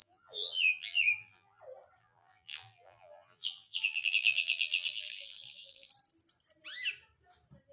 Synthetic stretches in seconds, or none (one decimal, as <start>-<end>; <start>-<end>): 0.0-1.6; 2.0-5.9